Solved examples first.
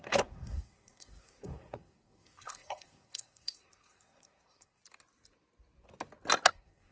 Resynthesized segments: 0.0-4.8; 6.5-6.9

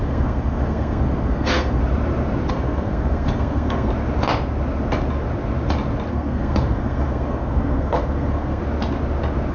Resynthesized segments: 0.0-1.8; 2.5-3.9; 6.1-8.6

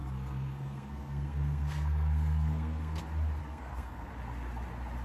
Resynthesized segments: 0.0-3.0; 3.4-4.1